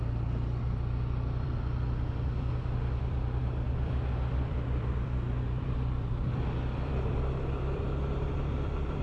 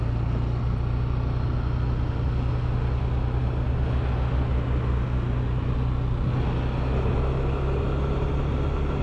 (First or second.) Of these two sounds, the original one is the second